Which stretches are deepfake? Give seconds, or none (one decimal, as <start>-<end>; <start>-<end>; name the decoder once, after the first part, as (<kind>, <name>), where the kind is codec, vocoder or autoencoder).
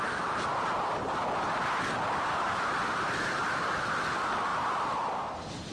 none